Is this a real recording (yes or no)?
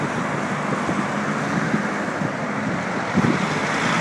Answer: yes